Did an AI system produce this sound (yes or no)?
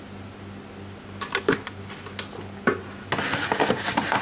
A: no